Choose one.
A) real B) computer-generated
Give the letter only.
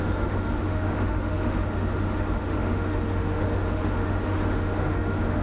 B